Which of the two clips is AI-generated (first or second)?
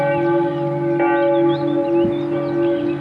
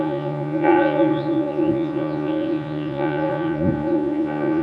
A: second